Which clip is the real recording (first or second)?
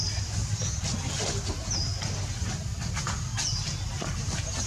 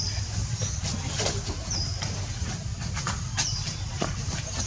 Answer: first